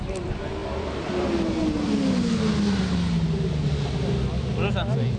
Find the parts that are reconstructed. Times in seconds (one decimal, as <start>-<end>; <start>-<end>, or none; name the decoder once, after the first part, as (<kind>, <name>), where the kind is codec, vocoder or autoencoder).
none

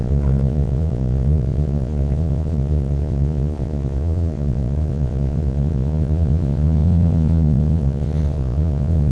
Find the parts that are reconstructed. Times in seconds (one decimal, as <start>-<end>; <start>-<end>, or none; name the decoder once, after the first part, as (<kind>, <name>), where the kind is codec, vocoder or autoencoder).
0.0-9.1 (vocoder, Vocos)

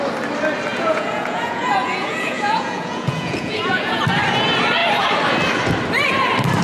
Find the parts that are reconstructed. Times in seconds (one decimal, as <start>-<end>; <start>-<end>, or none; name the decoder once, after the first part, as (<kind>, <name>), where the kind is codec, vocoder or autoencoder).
0.7-4.0 (vocoder, Vocos)

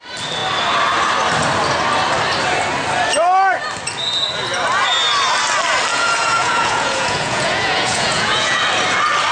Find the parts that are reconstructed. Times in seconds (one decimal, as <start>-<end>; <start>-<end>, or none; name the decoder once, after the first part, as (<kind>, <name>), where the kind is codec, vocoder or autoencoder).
5.9-8.6 (vocoder, Vocos)

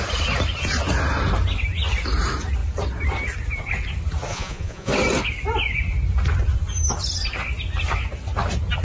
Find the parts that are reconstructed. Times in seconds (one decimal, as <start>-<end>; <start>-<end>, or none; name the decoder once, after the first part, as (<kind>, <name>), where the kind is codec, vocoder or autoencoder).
4.3-4.9 (vocoder, Vocos)

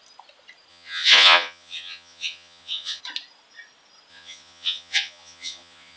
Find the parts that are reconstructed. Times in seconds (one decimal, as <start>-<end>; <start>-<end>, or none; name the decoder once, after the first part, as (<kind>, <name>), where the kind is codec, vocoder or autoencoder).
0.7-3.0 (vocoder, Vocos); 4.1-6.0